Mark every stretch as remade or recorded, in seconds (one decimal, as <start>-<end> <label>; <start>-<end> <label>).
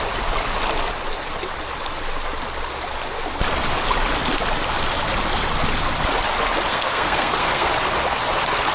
0.0-6.7 recorded; 6.7-7.7 remade; 7.7-8.7 recorded